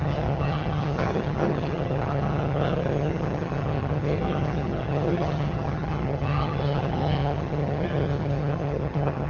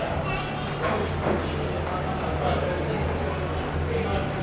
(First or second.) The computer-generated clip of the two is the first